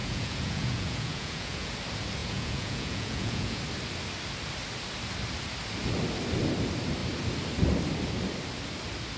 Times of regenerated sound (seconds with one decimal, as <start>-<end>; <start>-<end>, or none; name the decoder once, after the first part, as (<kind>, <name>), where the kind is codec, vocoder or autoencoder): 0.0-1.7 (vocoder, Vocos); 2.2-3.6